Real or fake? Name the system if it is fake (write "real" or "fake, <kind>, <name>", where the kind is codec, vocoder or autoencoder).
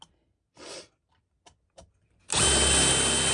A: real